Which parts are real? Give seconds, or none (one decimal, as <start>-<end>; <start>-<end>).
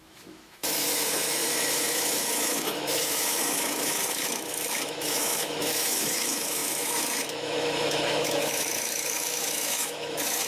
none